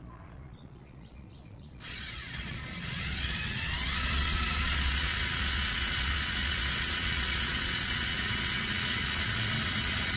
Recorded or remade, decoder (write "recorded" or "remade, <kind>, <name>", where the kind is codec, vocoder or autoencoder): remade, vocoder, Vocos